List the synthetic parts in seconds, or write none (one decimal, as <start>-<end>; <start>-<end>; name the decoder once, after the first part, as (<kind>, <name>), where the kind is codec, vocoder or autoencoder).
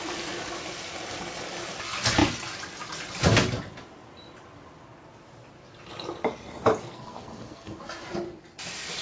6.8-7.8 (codec, SNAC)